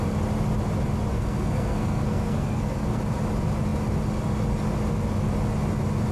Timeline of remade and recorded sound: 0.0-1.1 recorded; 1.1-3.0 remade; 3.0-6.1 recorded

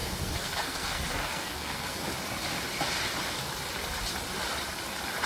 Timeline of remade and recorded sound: 0.0-2.0 remade; 2.0-5.3 recorded

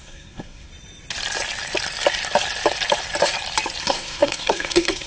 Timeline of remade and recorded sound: 0.0-0.7 remade; 0.7-3.8 recorded; 3.8-5.1 remade

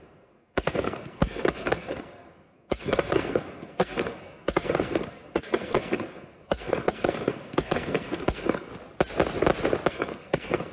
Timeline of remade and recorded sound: 0.0-8.7 remade; 8.7-9.9 recorded; 9.9-10.7 remade

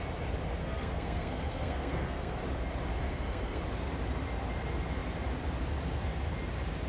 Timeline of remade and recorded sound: 0.0-0.6 recorded; 0.6-2.4 remade; 2.4-3.0 recorded; 3.0-3.6 remade; 3.6-6.9 recorded

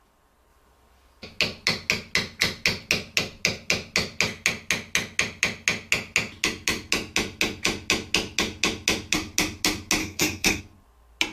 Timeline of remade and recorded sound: 0.0-10.0 recorded; 10.0-10.6 remade; 10.6-11.3 recorded

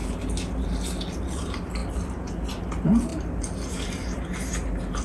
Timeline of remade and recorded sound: 0.0-5.0 recorded

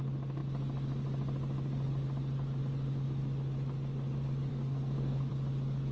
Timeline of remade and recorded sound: 0.0-4.5 recorded; 4.5-5.3 remade; 5.3-5.9 recorded